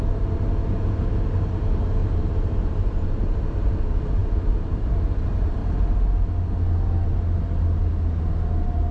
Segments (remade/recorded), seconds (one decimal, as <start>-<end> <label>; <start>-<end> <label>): 0.0-5.6 remade; 5.6-8.9 recorded